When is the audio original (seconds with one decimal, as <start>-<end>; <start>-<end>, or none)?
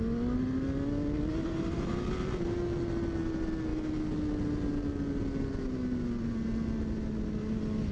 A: 0.0-1.3; 1.9-7.9